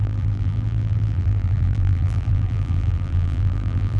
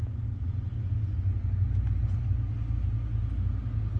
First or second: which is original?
second